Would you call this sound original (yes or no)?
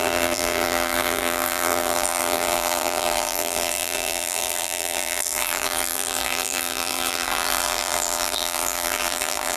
no